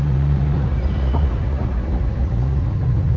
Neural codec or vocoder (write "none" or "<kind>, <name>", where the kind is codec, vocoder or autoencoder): vocoder, Vocos